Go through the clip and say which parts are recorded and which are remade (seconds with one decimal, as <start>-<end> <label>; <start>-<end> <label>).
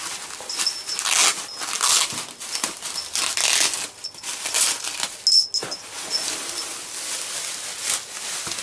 0.0-8.6 recorded